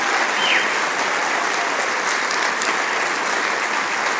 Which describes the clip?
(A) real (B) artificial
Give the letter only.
A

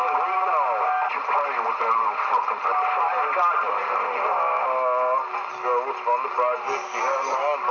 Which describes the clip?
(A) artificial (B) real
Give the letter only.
B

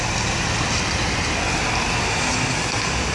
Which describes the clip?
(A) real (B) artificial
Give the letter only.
A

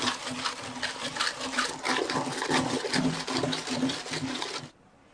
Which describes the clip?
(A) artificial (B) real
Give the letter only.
B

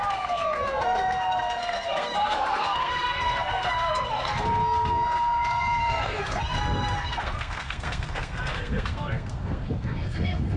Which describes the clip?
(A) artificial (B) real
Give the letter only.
A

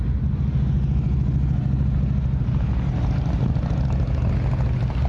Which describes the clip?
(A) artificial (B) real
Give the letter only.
B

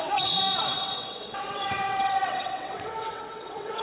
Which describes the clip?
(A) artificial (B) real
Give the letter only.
A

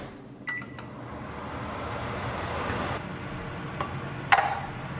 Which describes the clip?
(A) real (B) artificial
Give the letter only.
A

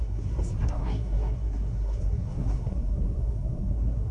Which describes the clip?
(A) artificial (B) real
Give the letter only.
A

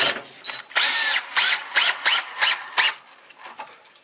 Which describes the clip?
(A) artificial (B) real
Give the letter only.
B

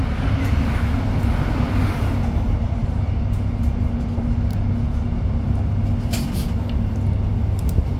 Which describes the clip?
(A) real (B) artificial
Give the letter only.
A